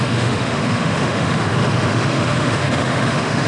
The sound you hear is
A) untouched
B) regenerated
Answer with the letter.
B